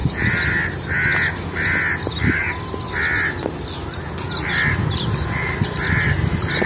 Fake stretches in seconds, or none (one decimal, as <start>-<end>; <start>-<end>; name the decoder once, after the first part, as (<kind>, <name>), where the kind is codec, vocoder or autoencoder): none